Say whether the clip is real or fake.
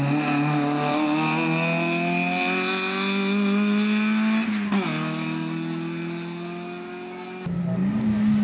real